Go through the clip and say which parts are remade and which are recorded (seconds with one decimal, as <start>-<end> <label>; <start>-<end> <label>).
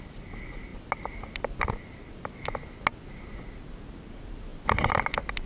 0.0-4.5 recorded; 4.5-5.1 remade; 5.1-5.5 recorded